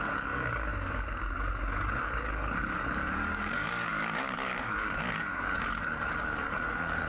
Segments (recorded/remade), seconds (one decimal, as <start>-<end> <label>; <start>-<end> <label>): 0.0-7.1 remade